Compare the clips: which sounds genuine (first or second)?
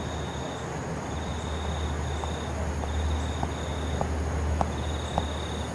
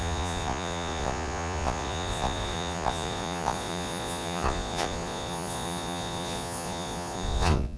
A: first